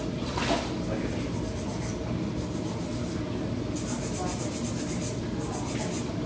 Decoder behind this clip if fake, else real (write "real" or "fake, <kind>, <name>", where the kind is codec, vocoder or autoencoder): real